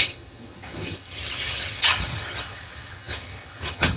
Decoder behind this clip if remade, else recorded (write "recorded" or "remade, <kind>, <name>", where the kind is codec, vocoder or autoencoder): remade, vocoder, HiFi-GAN